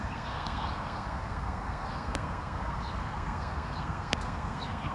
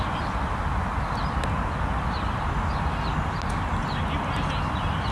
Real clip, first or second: second